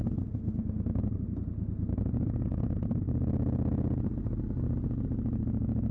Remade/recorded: recorded